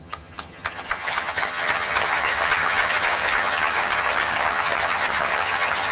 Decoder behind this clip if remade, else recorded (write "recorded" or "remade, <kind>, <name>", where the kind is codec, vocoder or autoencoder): remade, vocoder, HiFi-GAN